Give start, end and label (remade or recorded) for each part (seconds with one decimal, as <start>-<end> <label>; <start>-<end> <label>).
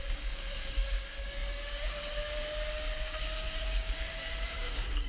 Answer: 0.0-5.1 remade